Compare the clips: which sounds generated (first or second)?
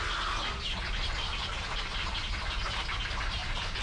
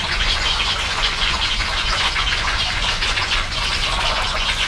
second